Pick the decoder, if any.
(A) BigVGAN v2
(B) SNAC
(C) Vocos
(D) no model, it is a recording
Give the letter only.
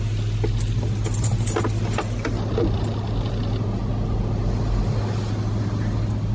D